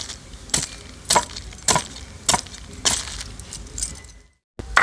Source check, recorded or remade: recorded